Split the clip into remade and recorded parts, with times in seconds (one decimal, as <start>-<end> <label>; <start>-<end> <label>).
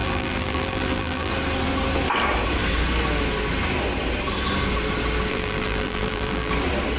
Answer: 0.0-1.3 remade; 1.3-5.3 recorded; 5.3-6.5 remade; 6.5-7.0 recorded